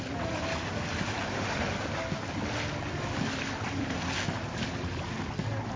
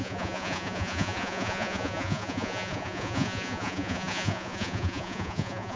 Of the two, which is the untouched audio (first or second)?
first